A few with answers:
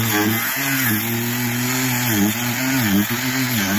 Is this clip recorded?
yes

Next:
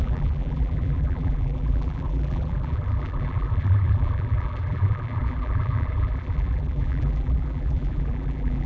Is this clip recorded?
no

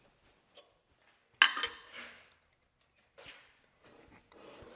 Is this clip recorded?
yes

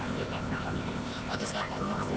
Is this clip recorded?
no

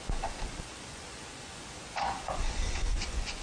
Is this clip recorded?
no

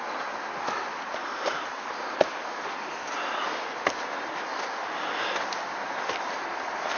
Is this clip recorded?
yes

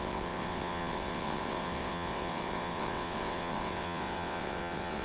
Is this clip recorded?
no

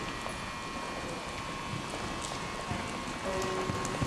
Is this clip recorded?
yes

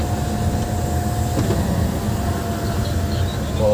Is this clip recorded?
yes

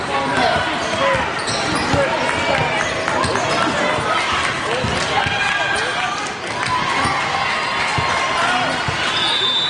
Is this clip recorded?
yes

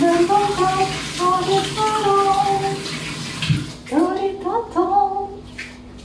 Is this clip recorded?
yes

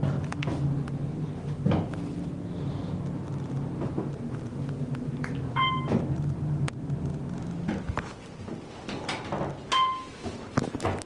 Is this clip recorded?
yes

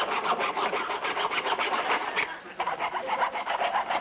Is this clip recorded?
yes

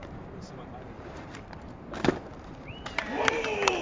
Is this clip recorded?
no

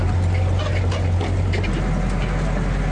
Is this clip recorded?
yes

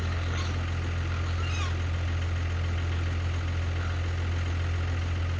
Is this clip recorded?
yes